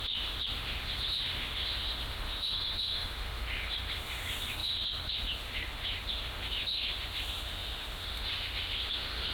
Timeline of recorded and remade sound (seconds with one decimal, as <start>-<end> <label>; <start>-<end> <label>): 0.0-9.3 remade